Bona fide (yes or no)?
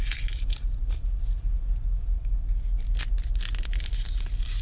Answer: yes